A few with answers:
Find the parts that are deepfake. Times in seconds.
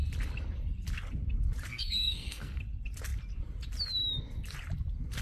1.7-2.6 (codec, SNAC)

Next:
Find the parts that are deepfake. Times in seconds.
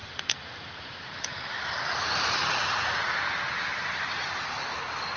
0.0-3.0 (vocoder, BigVGAN v2); 3.7-4.7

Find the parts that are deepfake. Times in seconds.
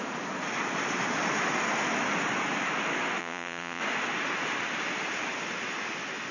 3.2-3.8 (vocoder, Vocos)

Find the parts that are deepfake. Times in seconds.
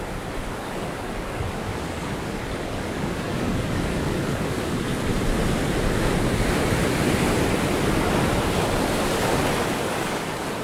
0.0-5.1 (codec, DAC); 9.7-10.6